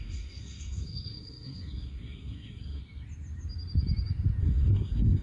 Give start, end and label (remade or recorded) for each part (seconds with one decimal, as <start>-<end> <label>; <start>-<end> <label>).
0.0-2.8 remade; 2.8-4.4 recorded; 4.4-5.2 remade